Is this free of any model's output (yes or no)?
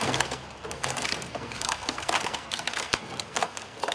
no